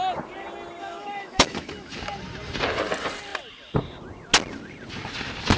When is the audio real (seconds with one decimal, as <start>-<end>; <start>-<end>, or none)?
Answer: 0.0-0.8; 1.9-5.6